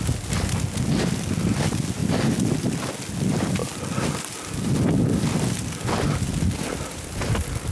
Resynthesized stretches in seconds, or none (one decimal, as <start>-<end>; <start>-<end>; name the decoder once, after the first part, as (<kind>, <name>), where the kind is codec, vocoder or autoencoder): none